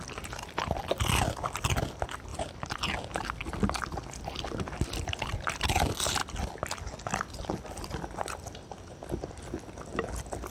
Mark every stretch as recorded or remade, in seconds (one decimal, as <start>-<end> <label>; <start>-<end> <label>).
0.0-2.3 recorded; 2.3-5.8 remade; 5.8-10.5 recorded